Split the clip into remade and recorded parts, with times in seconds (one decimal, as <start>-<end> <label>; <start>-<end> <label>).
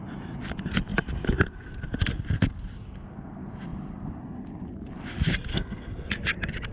0.0-5.5 recorded; 5.5-6.1 remade; 6.1-6.7 recorded